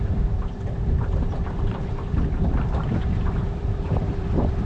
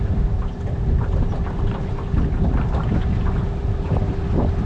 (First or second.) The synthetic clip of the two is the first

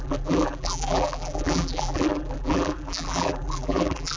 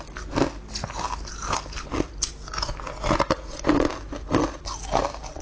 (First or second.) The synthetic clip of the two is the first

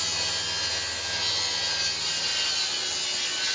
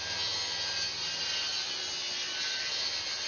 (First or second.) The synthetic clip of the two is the second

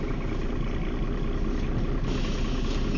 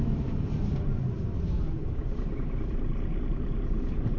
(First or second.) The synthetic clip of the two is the second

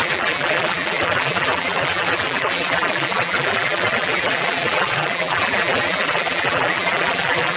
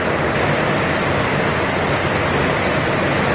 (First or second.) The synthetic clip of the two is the first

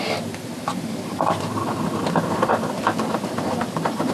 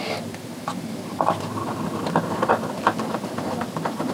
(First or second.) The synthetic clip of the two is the first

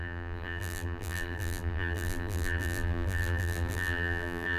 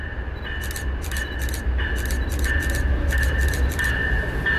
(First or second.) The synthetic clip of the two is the first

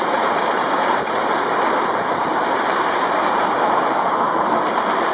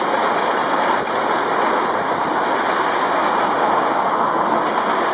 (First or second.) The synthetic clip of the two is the first